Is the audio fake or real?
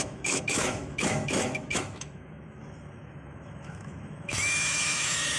fake